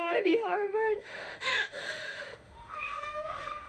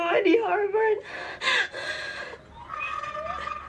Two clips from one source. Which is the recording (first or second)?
second